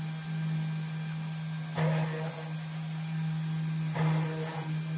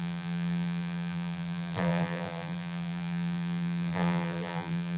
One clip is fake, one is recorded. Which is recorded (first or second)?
first